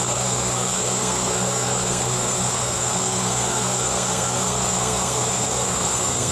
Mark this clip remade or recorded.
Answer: remade